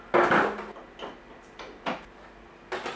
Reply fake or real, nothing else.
real